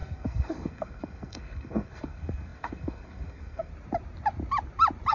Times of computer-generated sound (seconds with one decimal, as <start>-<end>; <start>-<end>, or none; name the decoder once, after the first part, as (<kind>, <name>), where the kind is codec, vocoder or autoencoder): 0.0-3.7 (codec, SNAC)